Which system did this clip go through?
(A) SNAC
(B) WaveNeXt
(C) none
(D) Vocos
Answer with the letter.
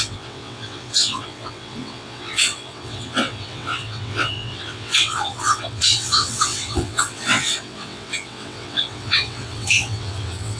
B